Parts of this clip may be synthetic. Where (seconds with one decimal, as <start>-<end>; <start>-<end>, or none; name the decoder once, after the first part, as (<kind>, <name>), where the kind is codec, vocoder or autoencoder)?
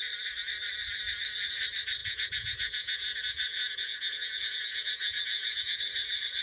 2.0-5.8 (vocoder, Vocos)